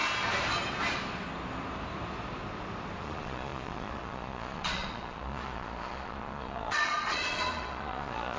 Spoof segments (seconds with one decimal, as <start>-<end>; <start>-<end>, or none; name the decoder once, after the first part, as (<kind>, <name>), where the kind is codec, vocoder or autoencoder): 3.0-8.4 (vocoder, Vocos)